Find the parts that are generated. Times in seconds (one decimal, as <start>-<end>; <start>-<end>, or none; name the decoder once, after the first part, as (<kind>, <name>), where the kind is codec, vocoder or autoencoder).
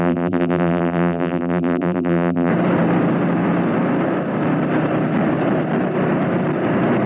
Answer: 0.0-2.5 (vocoder, BigVGAN v2)